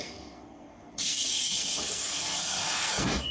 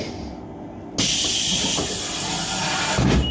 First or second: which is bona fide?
second